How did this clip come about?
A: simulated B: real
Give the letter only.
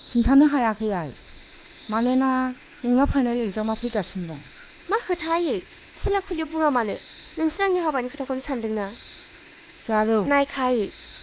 A